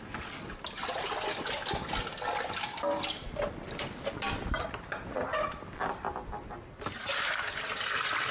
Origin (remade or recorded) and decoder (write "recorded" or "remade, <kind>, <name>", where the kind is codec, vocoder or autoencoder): recorded